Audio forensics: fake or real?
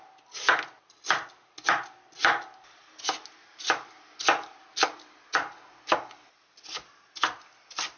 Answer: real